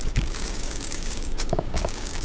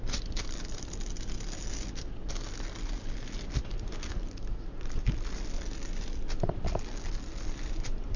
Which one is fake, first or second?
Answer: first